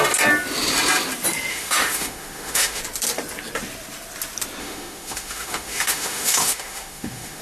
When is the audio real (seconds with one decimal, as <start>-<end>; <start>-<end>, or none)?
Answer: 0.0-1.5; 2.8-4.6

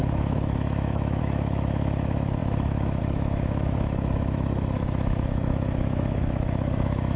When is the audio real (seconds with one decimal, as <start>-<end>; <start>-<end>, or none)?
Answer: none